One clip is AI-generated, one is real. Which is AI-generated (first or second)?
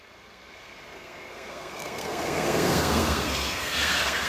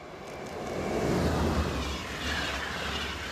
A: first